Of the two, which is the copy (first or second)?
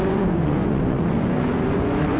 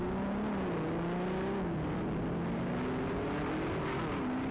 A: first